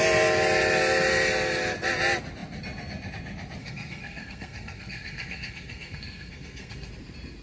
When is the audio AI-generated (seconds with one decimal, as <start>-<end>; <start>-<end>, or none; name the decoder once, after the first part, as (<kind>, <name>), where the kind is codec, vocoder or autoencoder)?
3.6-6.9 (codec, SNAC)